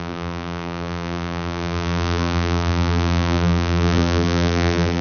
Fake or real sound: fake